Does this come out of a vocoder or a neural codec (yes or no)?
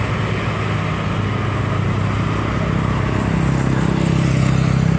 no